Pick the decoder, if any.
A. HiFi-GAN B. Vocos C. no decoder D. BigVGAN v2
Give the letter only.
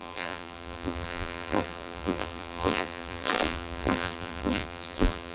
D